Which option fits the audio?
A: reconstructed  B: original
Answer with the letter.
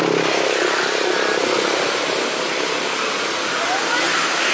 B